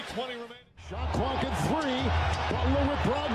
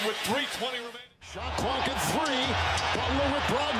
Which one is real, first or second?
first